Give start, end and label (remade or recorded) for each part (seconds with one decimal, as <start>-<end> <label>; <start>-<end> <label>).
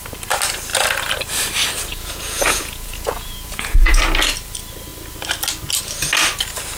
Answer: 0.0-1.9 recorded; 1.9-4.0 remade; 4.0-6.8 recorded